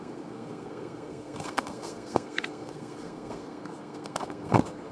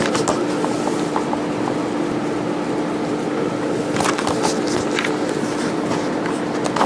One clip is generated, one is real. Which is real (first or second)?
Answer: second